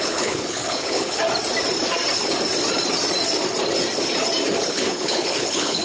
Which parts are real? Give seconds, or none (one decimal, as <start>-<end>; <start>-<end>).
1.2-4.7